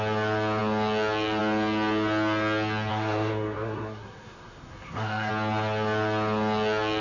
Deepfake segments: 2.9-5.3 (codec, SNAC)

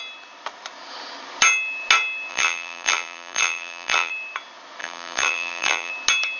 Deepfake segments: 2.3-4.1 (vocoder, BigVGAN v2); 4.8-5.9